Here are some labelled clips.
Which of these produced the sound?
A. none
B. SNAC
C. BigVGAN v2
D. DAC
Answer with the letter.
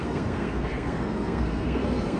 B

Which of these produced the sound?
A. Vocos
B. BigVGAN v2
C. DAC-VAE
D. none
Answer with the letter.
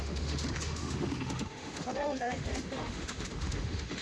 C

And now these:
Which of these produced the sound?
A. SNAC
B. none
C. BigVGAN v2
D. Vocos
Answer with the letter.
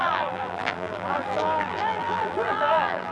C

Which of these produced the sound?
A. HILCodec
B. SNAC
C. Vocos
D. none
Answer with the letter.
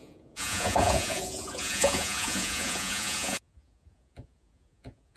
C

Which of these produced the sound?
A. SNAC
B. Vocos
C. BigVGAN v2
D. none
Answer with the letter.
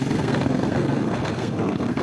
A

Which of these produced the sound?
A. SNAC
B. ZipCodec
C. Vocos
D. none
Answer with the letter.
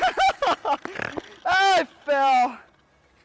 D